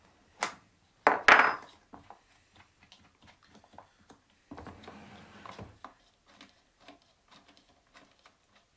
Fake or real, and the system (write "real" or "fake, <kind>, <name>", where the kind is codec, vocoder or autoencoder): real